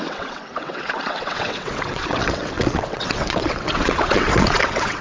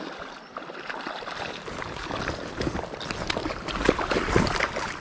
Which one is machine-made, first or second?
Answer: first